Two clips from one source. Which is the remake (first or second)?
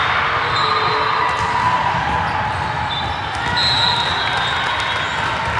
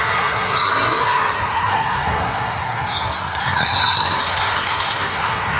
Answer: second